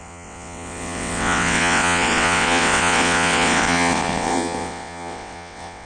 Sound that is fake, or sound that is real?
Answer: fake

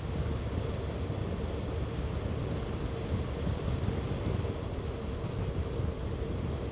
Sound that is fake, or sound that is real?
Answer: real